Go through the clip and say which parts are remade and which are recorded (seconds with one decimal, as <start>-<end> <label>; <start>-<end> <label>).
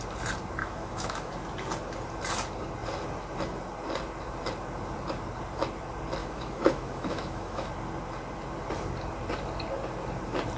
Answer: 0.0-0.6 recorded; 0.6-1.3 remade; 1.3-6.2 recorded; 6.2-7.7 remade; 7.7-10.6 recorded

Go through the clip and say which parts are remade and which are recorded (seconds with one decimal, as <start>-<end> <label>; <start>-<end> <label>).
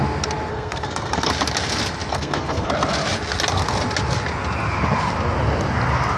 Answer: 0.0-0.5 recorded; 0.5-1.3 remade; 1.3-2.1 recorded; 2.1-2.7 remade; 2.7-6.2 recorded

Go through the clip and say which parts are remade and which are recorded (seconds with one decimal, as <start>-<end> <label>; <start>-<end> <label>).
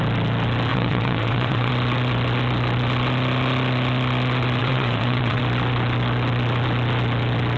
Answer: 0.0-0.7 recorded; 0.7-1.7 remade; 1.7-4.6 recorded; 4.6-5.4 remade; 5.4-7.6 recorded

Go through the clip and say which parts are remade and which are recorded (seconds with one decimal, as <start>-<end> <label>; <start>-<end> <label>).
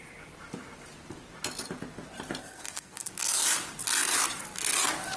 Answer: 0.0-2.4 recorded; 2.4-3.1 remade; 3.1-5.2 recorded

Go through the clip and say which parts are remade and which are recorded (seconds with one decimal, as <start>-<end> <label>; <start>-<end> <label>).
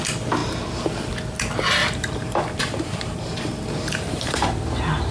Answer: 0.0-1.8 recorded; 1.8-5.1 remade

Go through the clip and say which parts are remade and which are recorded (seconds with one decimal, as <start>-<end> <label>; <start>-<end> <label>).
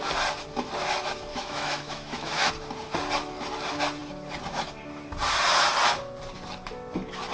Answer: 0.0-1.3 recorded; 1.3-2.5 remade; 2.5-7.3 recorded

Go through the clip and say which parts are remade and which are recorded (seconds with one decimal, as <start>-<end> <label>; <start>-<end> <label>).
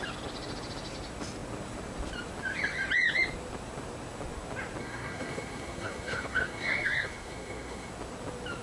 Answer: 0.0-4.8 recorded; 4.8-7.9 remade; 7.9-8.6 recorded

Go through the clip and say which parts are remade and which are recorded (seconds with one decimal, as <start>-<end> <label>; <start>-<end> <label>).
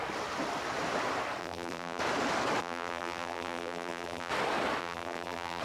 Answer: 0.0-1.4 recorded; 1.4-2.0 remade; 2.0-2.6 recorded; 2.6-4.3 remade; 4.3-4.8 recorded; 4.8-5.6 remade